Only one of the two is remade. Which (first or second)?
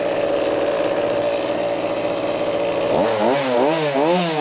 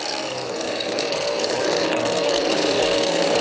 second